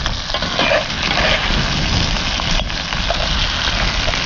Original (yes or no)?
yes